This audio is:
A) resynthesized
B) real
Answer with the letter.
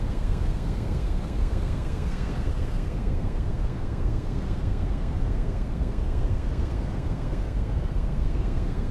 A